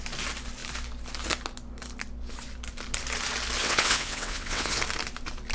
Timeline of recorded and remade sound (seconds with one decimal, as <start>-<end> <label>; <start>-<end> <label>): 0.0-3.6 recorded; 3.6-4.8 remade; 4.8-5.5 recorded